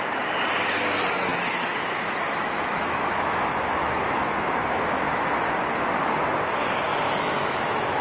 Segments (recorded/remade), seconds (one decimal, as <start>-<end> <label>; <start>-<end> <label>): 0.0-1.3 recorded; 1.3-5.1 remade; 5.1-6.9 recorded; 6.9-8.0 remade